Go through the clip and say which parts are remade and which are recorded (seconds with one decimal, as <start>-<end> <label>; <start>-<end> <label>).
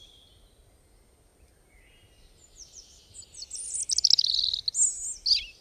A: 0.0-5.6 recorded